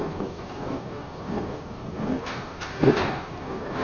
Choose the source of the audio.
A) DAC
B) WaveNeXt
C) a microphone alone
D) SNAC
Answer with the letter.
A